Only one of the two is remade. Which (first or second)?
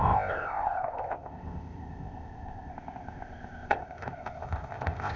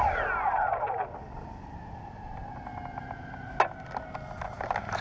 first